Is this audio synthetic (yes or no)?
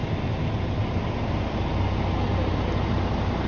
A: no